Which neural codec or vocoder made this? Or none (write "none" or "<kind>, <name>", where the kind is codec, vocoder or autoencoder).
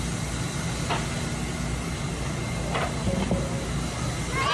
none